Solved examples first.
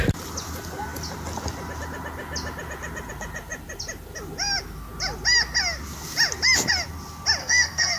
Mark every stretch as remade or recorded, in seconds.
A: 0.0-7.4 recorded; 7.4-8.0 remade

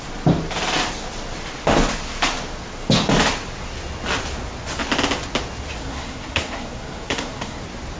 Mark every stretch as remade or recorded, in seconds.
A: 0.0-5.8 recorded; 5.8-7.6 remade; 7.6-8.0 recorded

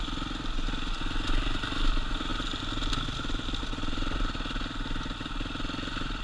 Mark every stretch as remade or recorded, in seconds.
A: 0.0-6.2 recorded